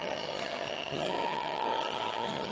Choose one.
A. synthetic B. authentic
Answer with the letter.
A